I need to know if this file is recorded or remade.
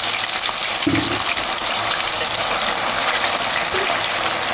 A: recorded